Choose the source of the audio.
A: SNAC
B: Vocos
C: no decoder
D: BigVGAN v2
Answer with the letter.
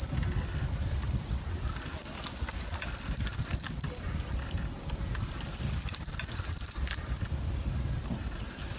C